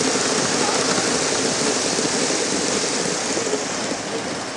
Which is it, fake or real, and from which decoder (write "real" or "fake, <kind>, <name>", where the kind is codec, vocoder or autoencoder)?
real